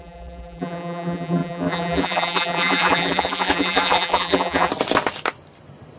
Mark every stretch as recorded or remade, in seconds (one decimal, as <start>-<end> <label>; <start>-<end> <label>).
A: 0.0-4.7 remade; 4.7-6.0 recorded